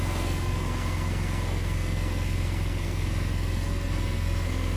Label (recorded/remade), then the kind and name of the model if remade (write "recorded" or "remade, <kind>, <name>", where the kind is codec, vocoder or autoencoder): remade, codec, SNAC